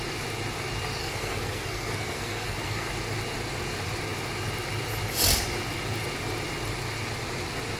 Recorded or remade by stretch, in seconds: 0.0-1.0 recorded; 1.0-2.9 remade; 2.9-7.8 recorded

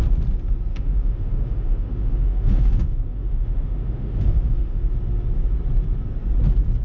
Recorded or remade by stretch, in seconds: 0.0-0.7 recorded; 0.7-4.8 remade; 4.8-6.8 recorded

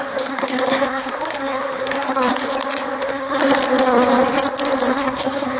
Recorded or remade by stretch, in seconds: 0.0-2.3 remade; 2.3-3.0 recorded; 3.0-3.4 remade; 3.4-4.9 recorded; 4.9-5.6 remade

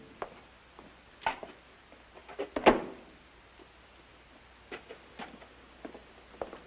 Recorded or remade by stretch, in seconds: 0.0-6.7 recorded

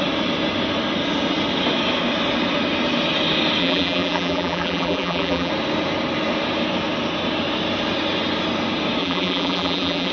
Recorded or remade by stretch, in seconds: 0.0-3.6 recorded; 3.6-5.5 remade; 5.5-9.0 recorded; 9.0-10.1 remade

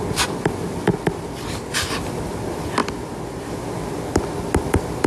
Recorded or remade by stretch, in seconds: 0.0-0.9 remade; 0.9-1.9 recorded; 1.9-2.8 remade; 2.8-3.5 recorded; 3.5-5.1 remade

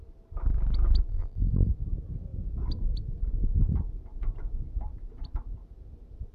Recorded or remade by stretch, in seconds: 0.0-1.1 recorded; 1.1-1.7 remade; 1.7-6.3 recorded